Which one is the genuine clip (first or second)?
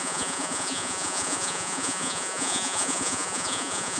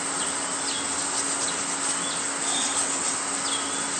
second